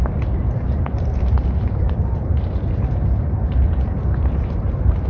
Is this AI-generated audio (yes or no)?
yes